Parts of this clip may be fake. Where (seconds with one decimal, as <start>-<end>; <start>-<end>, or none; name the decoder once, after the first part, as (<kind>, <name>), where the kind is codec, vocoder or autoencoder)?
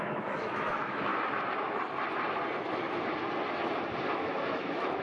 0.0-1.1 (autoencoder, DAC-VAE); 4.1-5.0